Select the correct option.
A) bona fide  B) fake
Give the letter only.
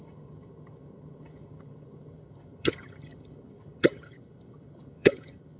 B